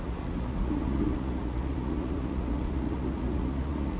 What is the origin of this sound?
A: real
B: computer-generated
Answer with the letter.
B